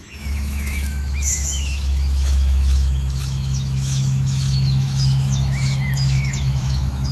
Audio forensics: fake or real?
fake